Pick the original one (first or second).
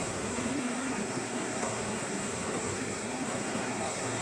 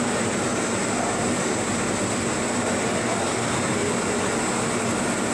second